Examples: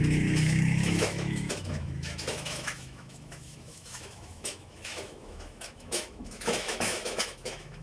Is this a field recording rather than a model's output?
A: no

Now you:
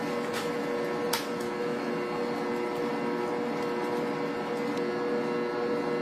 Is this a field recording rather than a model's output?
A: yes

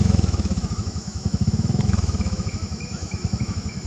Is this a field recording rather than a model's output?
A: no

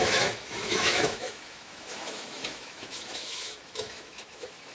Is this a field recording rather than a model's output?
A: no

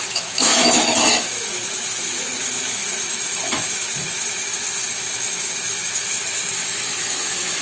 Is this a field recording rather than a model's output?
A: no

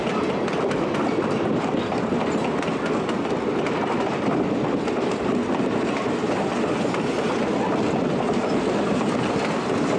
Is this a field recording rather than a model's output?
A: yes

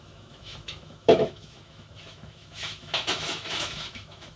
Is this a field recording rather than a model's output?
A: no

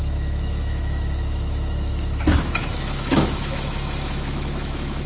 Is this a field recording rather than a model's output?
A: no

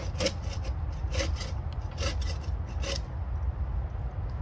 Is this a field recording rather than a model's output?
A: yes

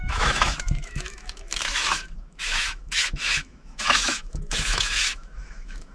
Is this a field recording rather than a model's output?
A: no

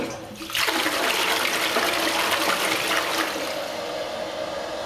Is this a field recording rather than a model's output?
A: yes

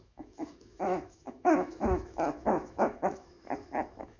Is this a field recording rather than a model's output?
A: no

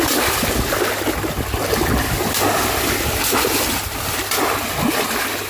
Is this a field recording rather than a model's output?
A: yes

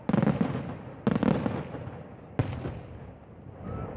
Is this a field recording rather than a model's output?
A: yes